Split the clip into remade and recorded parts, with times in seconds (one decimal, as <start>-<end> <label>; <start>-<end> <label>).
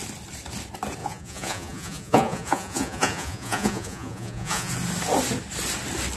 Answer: 0.0-1.0 recorded; 1.0-4.7 remade; 4.7-6.2 recorded